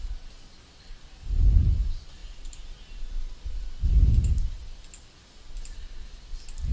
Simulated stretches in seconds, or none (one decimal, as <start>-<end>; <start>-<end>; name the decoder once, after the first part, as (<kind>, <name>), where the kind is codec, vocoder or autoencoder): none